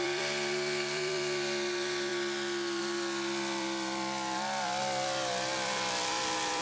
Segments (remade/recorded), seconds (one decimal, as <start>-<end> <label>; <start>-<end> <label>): 0.0-2.1 remade; 2.1-2.8 recorded; 2.8-6.6 remade